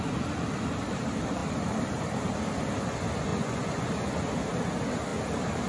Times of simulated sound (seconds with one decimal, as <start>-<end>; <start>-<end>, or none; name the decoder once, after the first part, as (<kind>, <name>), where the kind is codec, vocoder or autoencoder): 3.3-3.9 (vocoder, Vocos)

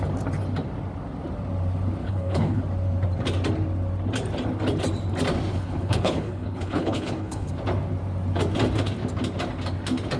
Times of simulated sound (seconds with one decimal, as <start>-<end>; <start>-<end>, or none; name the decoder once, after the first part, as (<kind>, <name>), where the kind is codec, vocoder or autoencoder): 2.0-2.6 (codec, HILCodec); 5.5-7.5